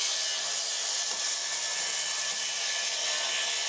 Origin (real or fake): real